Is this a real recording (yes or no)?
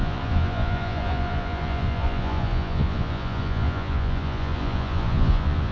no